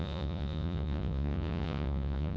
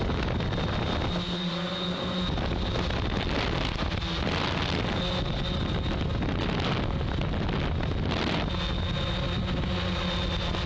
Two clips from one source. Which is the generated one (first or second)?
first